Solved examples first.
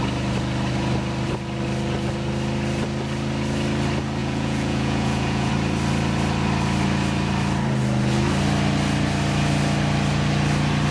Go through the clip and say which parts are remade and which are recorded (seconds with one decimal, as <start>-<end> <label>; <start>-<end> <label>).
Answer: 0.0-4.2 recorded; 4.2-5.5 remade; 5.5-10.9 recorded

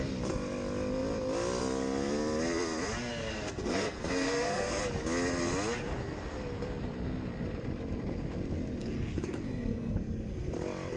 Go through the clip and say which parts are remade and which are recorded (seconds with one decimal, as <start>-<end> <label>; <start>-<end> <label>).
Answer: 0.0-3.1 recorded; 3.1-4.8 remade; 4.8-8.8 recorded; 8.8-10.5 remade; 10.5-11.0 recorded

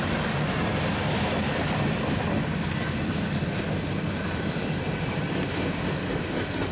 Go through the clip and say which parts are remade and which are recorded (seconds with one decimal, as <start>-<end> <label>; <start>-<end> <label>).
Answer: 0.0-6.7 recorded

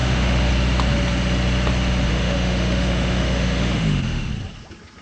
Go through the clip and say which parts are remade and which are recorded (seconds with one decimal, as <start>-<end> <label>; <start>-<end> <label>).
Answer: 0.0-0.5 remade; 0.5-2.1 recorded; 2.1-4.3 remade; 4.3-5.0 recorded

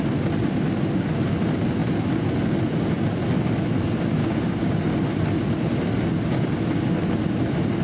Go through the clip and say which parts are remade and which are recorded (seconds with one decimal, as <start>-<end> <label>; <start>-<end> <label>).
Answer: 0.0-4.2 recorded; 4.2-4.7 remade; 4.7-7.8 recorded